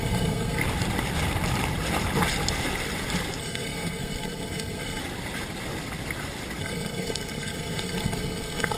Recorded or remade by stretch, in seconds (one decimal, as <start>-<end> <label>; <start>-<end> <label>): 0.0-0.6 remade; 0.6-3.4 recorded; 3.4-5.0 remade; 5.0-6.6 recorded; 6.6-8.8 remade